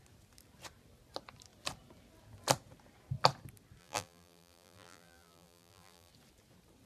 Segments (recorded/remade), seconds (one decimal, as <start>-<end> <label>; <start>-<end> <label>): 0.0-3.8 recorded; 3.8-6.1 remade; 6.1-6.9 recorded